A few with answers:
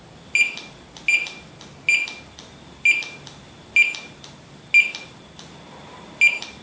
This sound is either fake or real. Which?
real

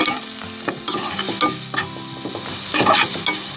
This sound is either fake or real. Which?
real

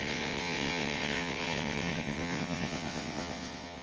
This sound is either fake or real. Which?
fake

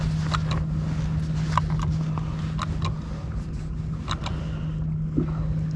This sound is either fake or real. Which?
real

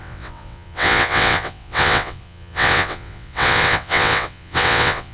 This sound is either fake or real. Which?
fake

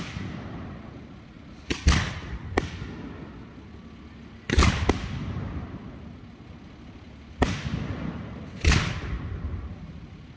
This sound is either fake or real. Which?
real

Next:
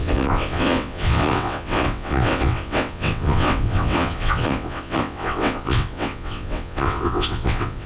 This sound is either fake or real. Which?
fake